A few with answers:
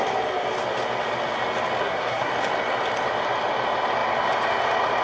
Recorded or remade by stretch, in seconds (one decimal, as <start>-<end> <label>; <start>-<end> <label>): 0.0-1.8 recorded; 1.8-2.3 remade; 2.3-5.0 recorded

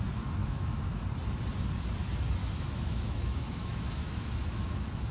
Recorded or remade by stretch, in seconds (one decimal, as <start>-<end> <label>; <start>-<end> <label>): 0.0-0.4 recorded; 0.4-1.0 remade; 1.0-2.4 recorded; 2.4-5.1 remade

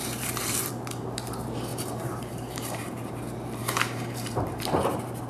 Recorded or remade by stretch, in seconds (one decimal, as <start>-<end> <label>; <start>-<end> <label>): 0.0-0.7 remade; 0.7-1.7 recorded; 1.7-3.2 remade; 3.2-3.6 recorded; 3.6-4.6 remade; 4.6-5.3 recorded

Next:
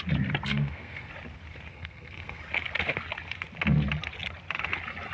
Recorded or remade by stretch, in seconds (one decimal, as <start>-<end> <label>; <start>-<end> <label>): 0.0-0.5 recorded; 0.5-1.1 remade; 1.1-1.7 recorded; 1.7-2.4 remade; 2.4-5.1 recorded

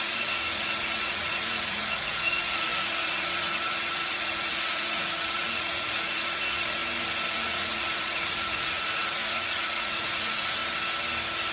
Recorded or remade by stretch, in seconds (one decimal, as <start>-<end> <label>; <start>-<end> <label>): 0.0-6.8 remade; 6.8-7.3 recorded; 7.3-10.6 remade; 10.6-11.5 recorded

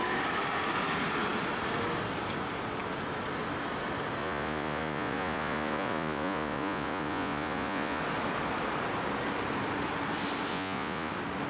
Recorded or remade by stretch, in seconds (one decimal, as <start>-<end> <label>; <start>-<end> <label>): 0.0-4.2 recorded; 4.2-8.0 remade; 8.0-10.5 recorded; 10.5-11.1 remade; 11.1-11.5 recorded

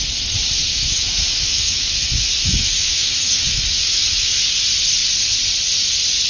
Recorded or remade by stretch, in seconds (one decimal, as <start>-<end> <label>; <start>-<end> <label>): 0.0-0.7 recorded; 0.7-4.4 remade; 4.4-6.3 recorded